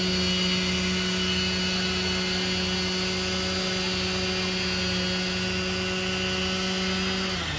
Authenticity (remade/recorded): recorded